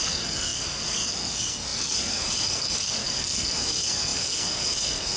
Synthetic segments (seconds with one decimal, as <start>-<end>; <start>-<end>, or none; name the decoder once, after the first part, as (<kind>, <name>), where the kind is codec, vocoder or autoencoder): 0.0-5.2 (codec, SNAC)